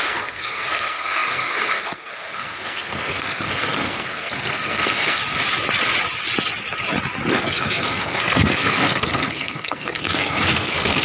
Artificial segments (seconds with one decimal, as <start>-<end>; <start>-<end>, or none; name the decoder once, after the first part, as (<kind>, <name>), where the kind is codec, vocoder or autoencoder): 0.0-5.2 (codec, SNAC); 7.3-11.0